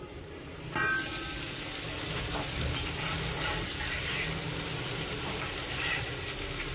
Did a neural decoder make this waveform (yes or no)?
no